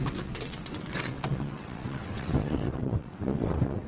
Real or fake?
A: fake